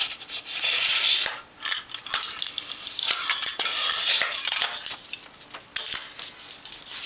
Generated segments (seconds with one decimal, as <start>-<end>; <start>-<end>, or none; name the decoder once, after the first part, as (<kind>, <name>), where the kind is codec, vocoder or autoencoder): none